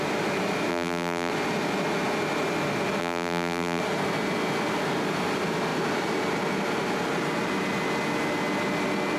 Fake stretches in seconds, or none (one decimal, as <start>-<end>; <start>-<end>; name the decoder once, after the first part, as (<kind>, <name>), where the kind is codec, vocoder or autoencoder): 0.7-1.3 (vocoder, BigVGAN v2); 3.0-3.8